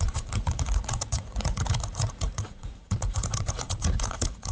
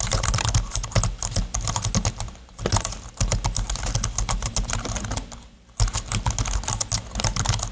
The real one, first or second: second